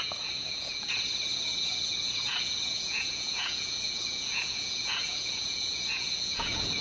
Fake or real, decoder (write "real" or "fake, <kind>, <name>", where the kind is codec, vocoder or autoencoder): fake, vocoder, Vocos